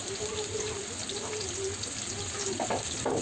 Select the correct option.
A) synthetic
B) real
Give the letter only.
B